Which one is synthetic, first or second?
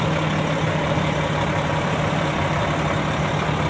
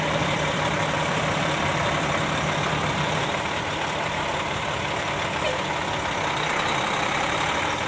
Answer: second